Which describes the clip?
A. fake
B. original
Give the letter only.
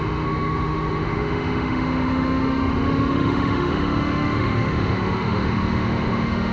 A